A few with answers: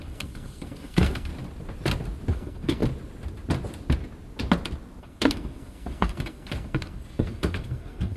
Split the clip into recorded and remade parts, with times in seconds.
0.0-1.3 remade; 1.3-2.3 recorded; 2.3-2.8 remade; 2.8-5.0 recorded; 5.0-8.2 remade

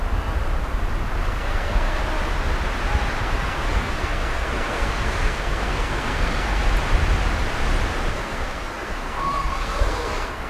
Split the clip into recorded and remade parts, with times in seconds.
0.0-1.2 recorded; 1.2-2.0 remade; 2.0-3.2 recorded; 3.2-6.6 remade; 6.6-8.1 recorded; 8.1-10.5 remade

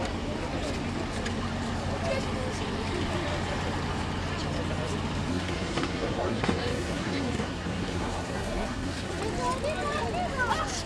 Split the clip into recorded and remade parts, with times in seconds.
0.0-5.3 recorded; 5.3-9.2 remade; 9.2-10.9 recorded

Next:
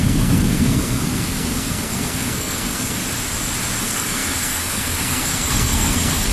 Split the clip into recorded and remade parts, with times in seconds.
0.0-3.0 remade; 3.0-3.8 recorded; 3.8-6.3 remade

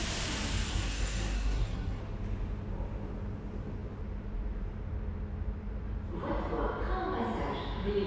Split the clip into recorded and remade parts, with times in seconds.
0.0-0.7 recorded; 0.7-2.0 remade; 2.0-8.1 recorded